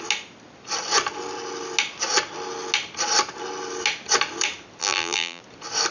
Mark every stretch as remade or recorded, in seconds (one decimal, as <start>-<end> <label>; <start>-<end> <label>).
0.0-4.8 recorded; 4.8-5.4 remade; 5.4-5.9 recorded